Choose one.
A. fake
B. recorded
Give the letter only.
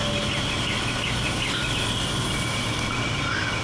B